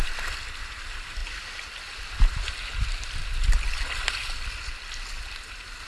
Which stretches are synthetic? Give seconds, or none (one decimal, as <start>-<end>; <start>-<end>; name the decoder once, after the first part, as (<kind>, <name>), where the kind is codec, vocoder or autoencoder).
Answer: none